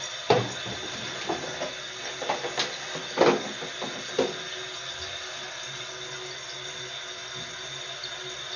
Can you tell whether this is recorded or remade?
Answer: recorded